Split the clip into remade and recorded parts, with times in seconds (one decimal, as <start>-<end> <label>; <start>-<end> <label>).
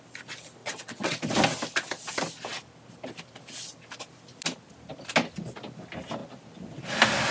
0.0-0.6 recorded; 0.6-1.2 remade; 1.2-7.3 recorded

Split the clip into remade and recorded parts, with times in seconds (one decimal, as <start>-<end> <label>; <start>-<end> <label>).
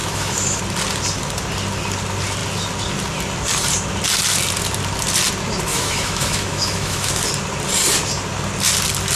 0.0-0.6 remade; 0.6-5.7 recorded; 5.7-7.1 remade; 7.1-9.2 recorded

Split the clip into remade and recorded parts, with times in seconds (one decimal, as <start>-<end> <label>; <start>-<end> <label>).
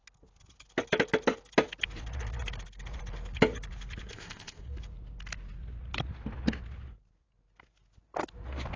0.0-4.1 recorded; 4.1-4.6 remade; 4.6-8.8 recorded